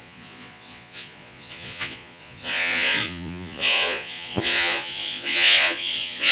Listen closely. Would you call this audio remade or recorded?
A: remade